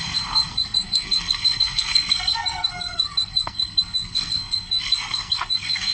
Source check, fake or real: fake